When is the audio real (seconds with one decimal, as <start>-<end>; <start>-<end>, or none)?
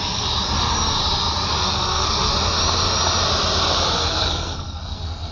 0.0-1.6; 2.3-4.0